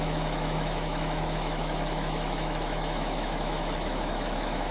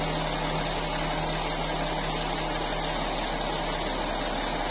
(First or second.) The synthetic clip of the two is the first